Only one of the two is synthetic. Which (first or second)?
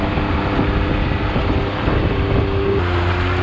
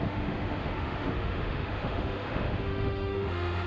second